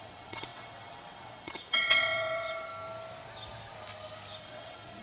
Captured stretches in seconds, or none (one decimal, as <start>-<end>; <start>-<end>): 2.7-4.4